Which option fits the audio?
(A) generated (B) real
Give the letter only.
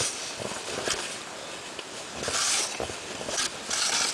B